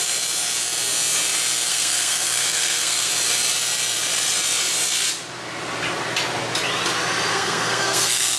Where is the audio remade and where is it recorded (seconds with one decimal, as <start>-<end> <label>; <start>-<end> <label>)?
0.0-1.7 recorded; 1.7-3.1 remade; 3.1-7.3 recorded; 7.3-8.4 remade

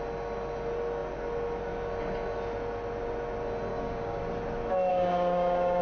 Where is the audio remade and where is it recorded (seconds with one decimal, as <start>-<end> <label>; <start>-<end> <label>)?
0.0-3.7 recorded; 3.7-4.2 remade; 4.2-4.9 recorded; 4.9-5.8 remade

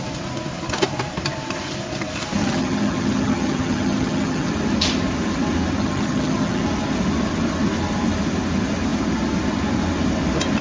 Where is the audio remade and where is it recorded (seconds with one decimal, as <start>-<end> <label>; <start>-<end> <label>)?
0.0-2.4 recorded; 2.4-4.5 remade; 4.5-5.8 recorded; 5.8-6.6 remade; 6.6-10.6 recorded